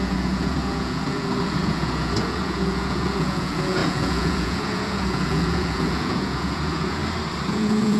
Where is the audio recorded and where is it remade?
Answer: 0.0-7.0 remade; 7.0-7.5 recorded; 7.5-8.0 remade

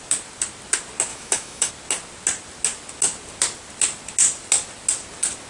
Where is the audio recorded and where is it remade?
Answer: 0.0-1.1 recorded; 1.1-1.7 remade; 1.7-5.5 recorded

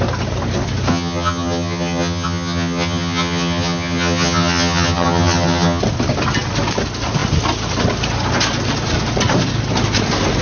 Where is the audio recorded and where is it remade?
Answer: 0.0-0.9 recorded; 0.9-5.8 remade; 5.8-10.4 recorded